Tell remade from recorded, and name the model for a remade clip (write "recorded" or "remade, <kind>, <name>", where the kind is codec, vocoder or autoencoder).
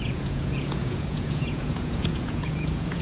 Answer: remade, vocoder, Vocos